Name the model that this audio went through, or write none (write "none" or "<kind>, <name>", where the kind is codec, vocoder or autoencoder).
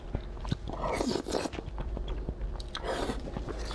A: none